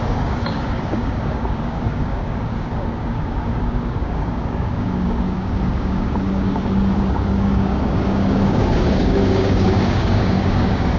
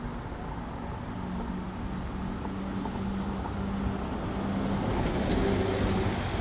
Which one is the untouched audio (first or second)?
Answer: second